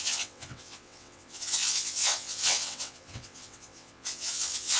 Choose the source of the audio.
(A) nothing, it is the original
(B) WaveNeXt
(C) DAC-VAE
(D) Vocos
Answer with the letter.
B